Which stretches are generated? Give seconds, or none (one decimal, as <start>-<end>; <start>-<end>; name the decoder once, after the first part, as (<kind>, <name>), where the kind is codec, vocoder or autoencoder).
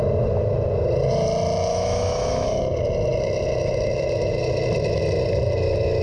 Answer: 1.7-2.6 (autoencoder, DAC-VAE)